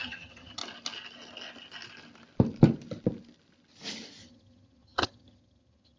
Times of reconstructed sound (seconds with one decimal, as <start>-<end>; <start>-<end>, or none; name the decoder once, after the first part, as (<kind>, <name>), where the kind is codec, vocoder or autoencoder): 0.0-0.6 (vocoder, HiFi-GAN); 4.2-6.0

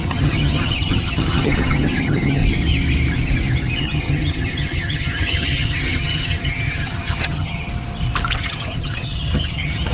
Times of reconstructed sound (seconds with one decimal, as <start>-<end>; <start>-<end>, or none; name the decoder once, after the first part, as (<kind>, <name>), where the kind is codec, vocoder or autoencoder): 0.0-2.4 (vocoder, HiFi-GAN); 3.8-7.7; 8.4-9.9

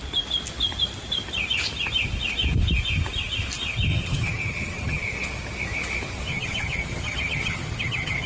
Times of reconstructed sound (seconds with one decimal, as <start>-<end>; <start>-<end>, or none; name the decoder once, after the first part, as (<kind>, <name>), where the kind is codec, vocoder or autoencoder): 3.9-5.0 (vocoder, HiFi-GAN); 6.3-8.3

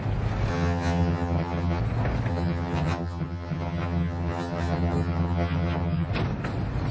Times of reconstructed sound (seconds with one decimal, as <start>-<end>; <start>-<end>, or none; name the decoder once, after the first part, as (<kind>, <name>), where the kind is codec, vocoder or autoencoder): 0.5-1.8 (vocoder, HiFi-GAN); 2.3-6.1

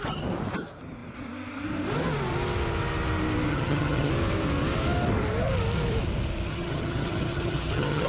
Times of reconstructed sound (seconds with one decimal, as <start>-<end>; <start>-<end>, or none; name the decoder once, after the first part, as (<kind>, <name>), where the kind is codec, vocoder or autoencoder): 3.5-4.1 (vocoder, HiFi-GAN); 6.5-8.1

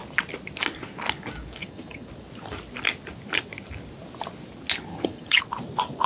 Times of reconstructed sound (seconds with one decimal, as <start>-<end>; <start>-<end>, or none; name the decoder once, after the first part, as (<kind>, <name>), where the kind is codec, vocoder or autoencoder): 1.6-2.1 (vocoder, HiFi-GAN); 4.9-5.4

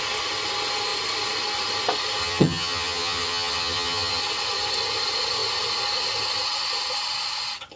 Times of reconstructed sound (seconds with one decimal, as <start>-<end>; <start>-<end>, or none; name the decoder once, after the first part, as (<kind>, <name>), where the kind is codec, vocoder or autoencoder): 2.2-4.2 (vocoder, HiFi-GAN)

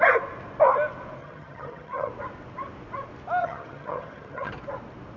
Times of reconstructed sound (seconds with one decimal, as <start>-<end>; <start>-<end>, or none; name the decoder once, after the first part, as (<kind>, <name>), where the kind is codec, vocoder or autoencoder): 1.2-2.1 (vocoder, HiFi-GAN); 3.4-4.5